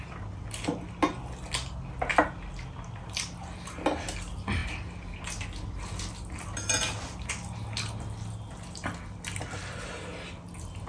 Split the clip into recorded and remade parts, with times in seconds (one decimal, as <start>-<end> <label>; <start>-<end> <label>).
0.0-10.9 recorded